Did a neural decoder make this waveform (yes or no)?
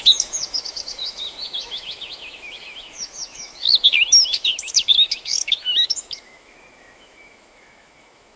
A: yes